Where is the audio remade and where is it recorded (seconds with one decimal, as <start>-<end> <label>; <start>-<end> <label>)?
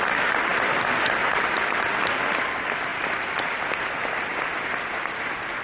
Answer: 0.0-2.9 recorded; 2.9-3.7 remade; 3.7-5.6 recorded